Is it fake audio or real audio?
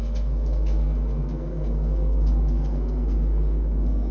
fake